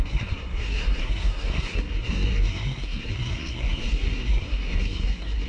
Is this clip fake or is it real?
fake